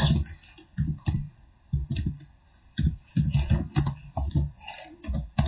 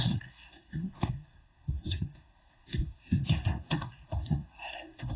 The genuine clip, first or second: first